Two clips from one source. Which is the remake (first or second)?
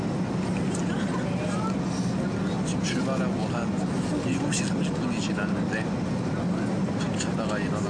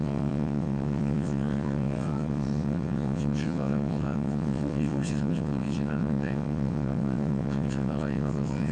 second